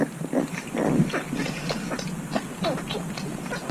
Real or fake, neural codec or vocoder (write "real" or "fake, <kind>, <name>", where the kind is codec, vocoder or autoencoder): real